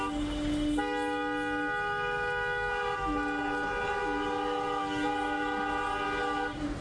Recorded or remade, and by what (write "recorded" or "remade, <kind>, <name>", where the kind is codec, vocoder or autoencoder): recorded